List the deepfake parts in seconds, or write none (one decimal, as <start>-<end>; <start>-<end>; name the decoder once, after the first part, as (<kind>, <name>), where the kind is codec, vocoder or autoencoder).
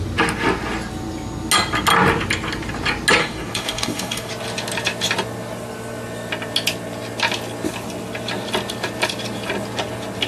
3.2-4.3 (codec, DAC)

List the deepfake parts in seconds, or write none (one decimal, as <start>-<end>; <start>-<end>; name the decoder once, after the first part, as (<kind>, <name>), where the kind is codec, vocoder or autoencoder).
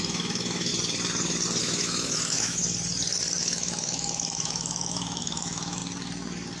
0.0-0.7 (autoencoder, DAC-VAE); 1.6-2.6; 3.4-5.8